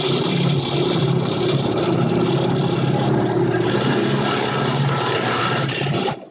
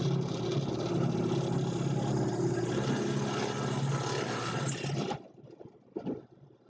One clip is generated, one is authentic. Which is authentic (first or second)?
second